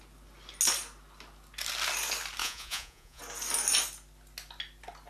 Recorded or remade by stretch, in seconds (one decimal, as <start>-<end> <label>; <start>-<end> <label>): 0.0-2.4 recorded; 2.4-3.2 remade; 3.2-5.1 recorded